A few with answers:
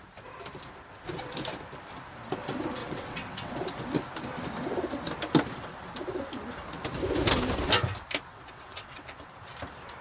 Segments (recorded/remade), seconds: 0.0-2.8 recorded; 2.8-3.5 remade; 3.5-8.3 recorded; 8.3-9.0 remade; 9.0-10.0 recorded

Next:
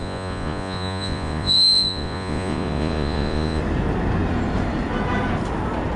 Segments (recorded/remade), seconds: 0.0-3.6 remade; 3.6-6.0 recorded

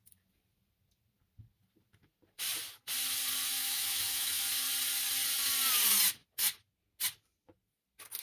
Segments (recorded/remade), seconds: 0.0-3.6 recorded; 3.6-4.4 remade; 4.4-8.2 recorded

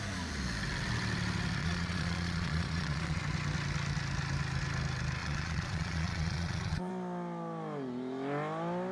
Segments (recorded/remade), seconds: 0.0-1.6 recorded; 1.6-3.2 remade; 3.2-5.2 recorded; 5.2-6.9 remade; 6.9-8.9 recorded

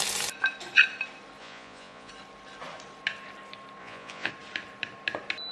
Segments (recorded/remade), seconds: 0.0-1.4 recorded; 1.4-2.1 remade; 2.1-3.8 recorded; 3.8-4.3 remade; 4.3-5.5 recorded

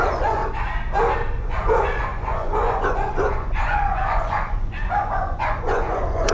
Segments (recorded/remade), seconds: 0.0-0.4 remade; 0.4-1.4 recorded; 1.4-6.3 remade

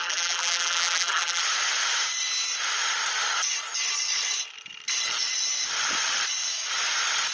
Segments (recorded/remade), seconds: 0.0-1.4 remade; 1.4-7.3 recorded

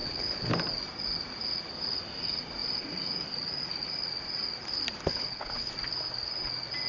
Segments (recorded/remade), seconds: 0.0-0.5 remade; 0.5-5.1 recorded; 5.1-5.7 remade; 5.7-6.9 recorded